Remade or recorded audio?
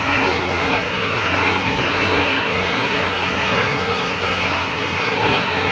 remade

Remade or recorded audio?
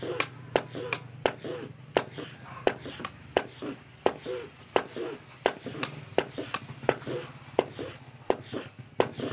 recorded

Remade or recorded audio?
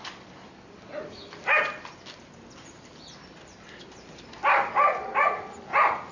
recorded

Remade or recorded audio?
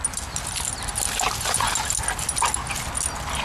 recorded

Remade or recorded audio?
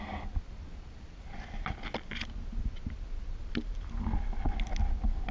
recorded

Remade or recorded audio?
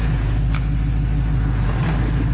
recorded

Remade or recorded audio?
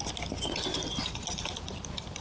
recorded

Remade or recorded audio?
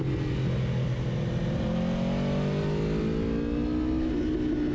recorded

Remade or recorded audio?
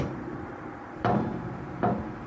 remade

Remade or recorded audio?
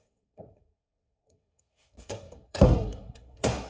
remade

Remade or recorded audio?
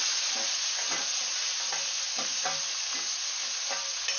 recorded